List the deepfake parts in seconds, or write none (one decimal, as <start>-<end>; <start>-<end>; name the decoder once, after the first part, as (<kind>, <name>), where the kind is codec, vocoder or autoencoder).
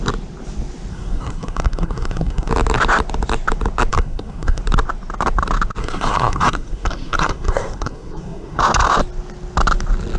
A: 0.9-2.5 (codec, SNAC); 3.9-4.6; 5.8-8.6